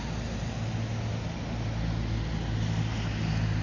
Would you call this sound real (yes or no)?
yes